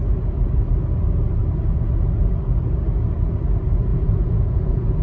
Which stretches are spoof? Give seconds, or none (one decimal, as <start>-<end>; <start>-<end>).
3.9-5.0